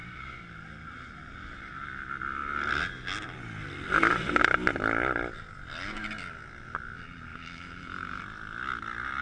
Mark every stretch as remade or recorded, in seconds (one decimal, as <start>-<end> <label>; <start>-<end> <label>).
0.0-7.3 recorded; 7.3-8.2 remade; 8.2-9.2 recorded